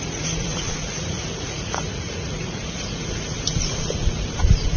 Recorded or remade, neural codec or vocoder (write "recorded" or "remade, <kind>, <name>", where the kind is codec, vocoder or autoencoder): remade, vocoder, Vocos